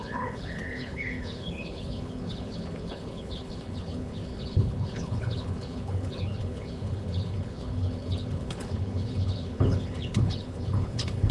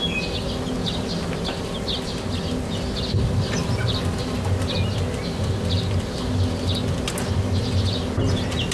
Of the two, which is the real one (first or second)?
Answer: second